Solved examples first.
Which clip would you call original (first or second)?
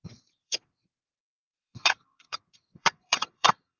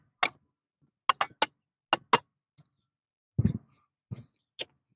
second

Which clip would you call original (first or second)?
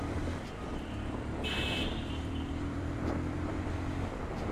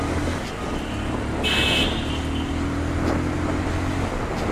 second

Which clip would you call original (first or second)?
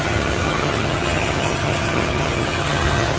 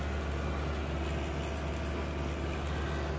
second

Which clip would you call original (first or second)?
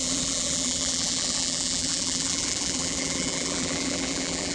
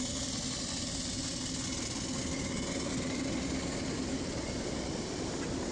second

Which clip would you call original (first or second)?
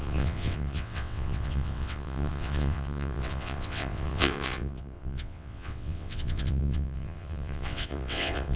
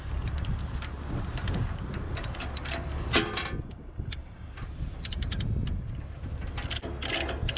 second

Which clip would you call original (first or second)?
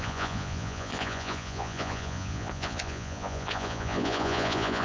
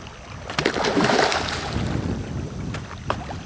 second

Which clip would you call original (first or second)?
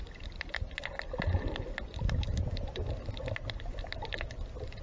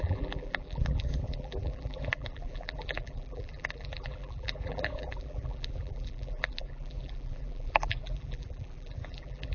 first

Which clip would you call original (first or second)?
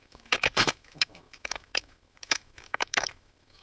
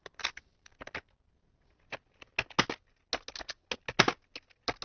second